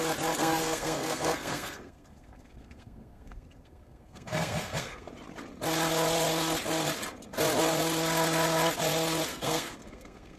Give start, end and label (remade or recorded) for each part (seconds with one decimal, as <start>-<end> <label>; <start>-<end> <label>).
0.0-0.4 recorded; 0.4-5.1 remade; 5.1-9.3 recorded; 9.3-10.4 remade